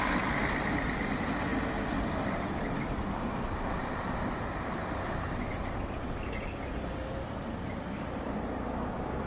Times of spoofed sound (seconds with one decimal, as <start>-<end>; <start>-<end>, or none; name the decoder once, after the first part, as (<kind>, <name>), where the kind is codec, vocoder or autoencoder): none